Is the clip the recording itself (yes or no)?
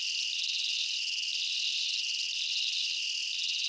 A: yes